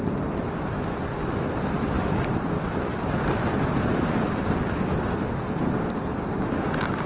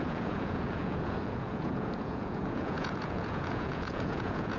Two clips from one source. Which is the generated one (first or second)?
second